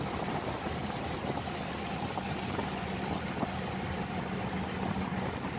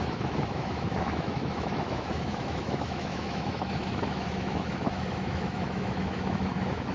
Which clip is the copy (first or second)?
second